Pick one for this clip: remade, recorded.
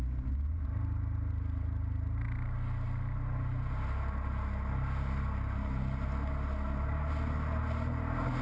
recorded